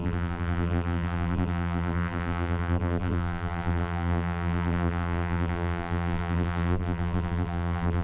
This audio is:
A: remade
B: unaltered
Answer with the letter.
A